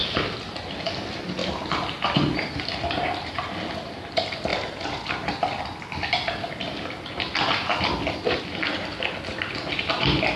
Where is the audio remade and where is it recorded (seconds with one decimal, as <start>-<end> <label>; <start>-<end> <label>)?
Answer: 0.0-0.7 recorded; 0.7-1.4 remade; 1.4-2.4 recorded; 2.4-4.5 remade; 4.5-8.4 recorded; 8.4-10.4 remade

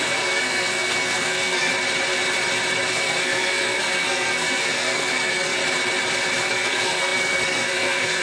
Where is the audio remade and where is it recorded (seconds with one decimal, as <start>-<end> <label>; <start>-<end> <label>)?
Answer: 0.0-1.7 remade; 1.7-2.9 recorded; 2.9-5.6 remade; 5.6-6.4 recorded; 6.4-8.2 remade

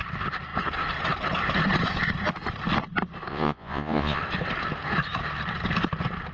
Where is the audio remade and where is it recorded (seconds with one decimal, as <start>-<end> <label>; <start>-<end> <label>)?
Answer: 0.0-3.3 recorded; 3.3-4.2 remade; 4.2-6.3 recorded

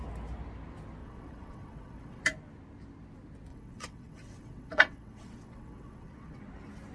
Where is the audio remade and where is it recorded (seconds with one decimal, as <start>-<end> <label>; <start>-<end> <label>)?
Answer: 0.0-1.0 recorded; 1.0-2.2 remade; 2.2-3.5 recorded; 3.5-6.4 remade; 6.4-6.9 recorded